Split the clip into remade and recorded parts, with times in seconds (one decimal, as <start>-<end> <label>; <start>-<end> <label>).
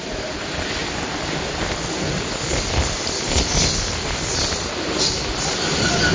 0.0-6.1 recorded